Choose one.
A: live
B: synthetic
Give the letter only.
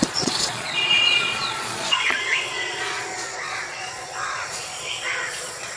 B